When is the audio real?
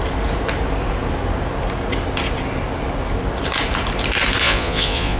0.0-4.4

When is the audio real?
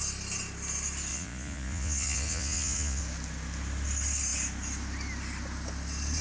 0.0-1.1; 3.0-6.2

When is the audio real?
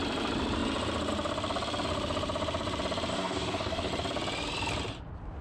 0.0-3.1; 3.9-5.4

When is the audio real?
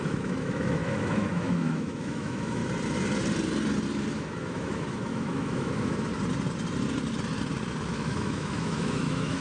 2.6-4.1; 6.1-7.9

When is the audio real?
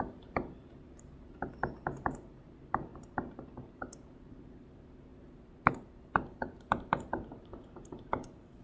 none